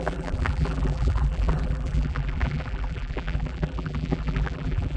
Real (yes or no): no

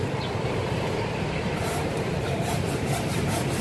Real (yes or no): no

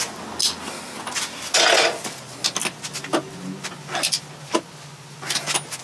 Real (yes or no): yes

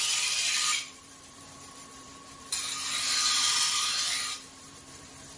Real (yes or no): no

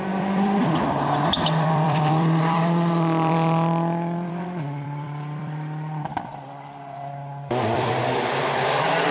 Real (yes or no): no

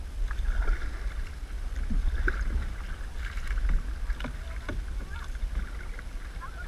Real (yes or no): yes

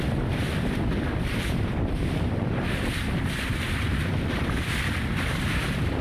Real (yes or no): no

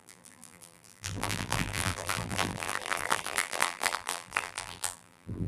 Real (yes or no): no